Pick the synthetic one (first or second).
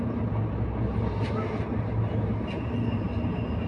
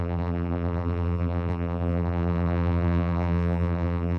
second